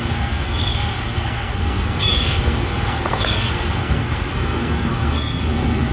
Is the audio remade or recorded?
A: remade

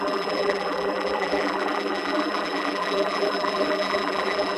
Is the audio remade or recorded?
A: remade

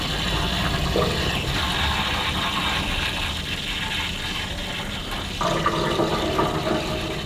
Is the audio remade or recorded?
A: recorded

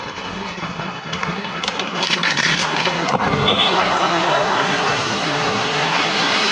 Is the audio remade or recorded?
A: remade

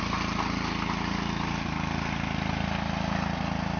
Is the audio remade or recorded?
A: recorded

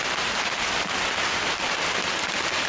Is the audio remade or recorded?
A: recorded